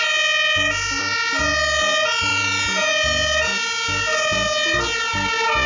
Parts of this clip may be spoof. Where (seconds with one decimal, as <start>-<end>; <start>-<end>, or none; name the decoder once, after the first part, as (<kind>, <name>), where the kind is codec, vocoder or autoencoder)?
2.3-2.9 (vocoder, Vocos)